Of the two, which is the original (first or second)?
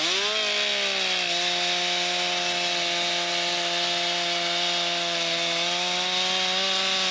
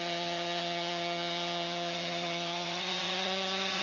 first